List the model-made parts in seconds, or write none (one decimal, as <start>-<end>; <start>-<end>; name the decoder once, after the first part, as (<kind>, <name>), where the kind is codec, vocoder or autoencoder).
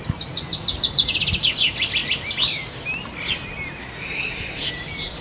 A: 3.8-4.7 (codec, SNAC)